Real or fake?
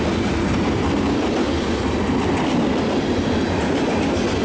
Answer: real